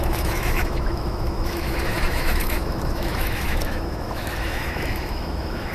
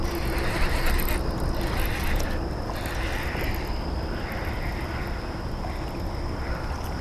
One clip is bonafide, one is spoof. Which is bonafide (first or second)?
second